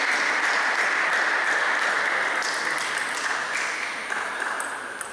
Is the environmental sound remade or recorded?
recorded